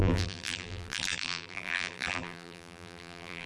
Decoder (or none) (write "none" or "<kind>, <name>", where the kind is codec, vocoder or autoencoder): vocoder, BigVGAN v2